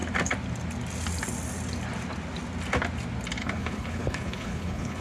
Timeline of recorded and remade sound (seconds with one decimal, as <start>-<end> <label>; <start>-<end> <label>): 0.0-3.4 recorded; 3.4-5.0 remade